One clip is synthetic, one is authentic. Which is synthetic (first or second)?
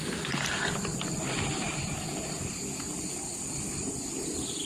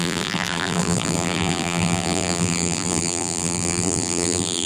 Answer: second